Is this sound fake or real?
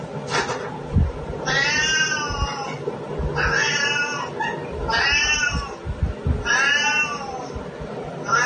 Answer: real